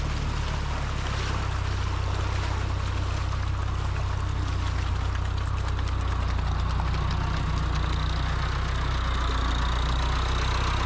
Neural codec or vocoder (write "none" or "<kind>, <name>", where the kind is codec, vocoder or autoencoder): none